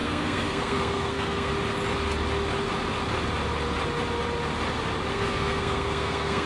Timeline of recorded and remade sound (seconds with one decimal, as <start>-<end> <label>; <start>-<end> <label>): 0.0-1.5 remade; 1.5-5.1 recorded; 5.1-6.5 remade